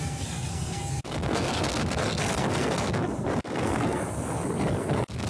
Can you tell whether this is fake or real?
fake